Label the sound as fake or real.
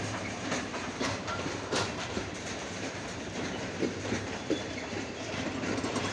fake